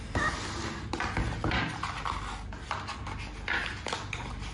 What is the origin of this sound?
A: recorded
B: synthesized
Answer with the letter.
A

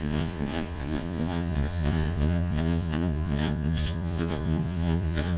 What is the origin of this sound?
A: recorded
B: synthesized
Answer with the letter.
B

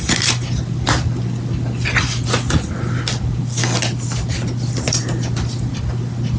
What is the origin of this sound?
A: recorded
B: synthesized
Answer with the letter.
A